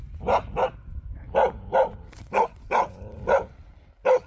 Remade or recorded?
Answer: remade